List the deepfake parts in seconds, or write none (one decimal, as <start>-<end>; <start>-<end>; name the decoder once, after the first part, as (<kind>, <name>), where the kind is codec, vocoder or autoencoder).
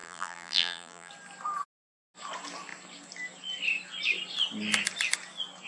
0.0-1.1 (vocoder, BigVGAN v2)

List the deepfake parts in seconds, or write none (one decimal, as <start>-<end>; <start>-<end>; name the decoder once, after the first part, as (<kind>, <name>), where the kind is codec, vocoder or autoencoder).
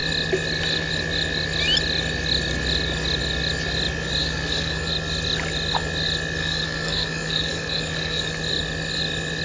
4.2-4.9 (codec, DAC); 6.4-8.3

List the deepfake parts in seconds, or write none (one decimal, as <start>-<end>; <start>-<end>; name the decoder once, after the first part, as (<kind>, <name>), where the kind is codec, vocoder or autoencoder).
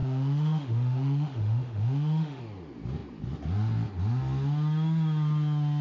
0.0-2.4 (autoencoder, DAC-VAE)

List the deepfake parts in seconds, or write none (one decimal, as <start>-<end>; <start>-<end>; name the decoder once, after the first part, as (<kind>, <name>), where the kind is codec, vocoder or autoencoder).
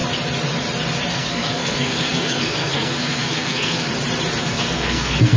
1.1-3.9 (codec, SNAC); 4.4-5.4